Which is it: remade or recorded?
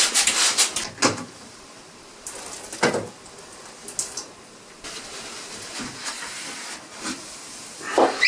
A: recorded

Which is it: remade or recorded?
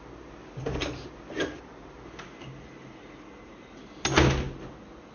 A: recorded